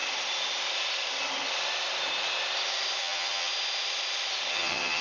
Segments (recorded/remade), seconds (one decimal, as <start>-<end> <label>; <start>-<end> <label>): 0.0-3.0 recorded; 3.0-3.5 remade; 3.5-4.5 recorded; 4.5-5.0 remade

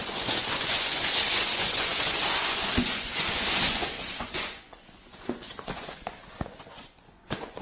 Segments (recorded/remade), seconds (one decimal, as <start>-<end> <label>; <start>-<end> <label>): 0.0-7.6 remade